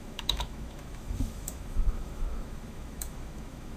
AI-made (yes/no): yes